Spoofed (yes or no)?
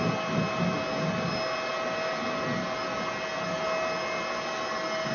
no